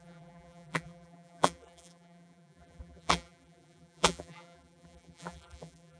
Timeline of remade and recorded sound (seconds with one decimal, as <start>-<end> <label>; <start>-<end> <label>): 0.0-6.0 remade